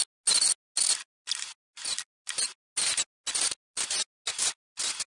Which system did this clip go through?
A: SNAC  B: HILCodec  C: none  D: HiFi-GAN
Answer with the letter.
C